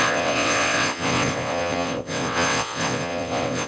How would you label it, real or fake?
fake